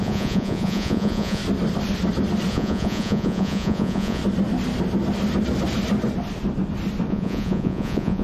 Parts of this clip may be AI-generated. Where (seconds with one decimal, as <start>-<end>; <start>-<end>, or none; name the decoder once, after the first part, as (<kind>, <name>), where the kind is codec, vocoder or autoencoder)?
0.0-1.4 (vocoder, Vocos); 2.5-4.2; 7.1-8.2